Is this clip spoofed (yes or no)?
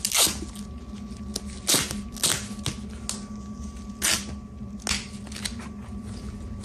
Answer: no